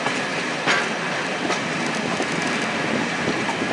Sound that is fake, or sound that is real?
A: real